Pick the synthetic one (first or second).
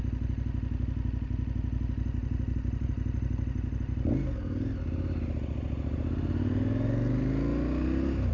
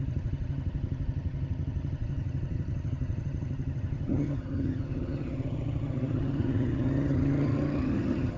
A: second